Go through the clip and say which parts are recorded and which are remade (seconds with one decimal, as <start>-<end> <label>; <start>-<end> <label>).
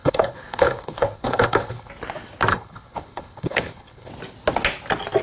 0.0-1.9 remade; 1.9-2.5 recorded; 2.5-4.1 remade; 4.1-5.2 recorded